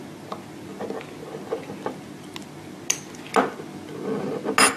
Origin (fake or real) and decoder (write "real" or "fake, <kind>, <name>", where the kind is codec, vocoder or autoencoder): real